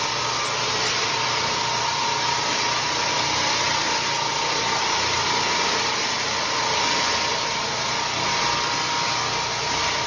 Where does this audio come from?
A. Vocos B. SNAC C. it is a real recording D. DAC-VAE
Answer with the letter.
C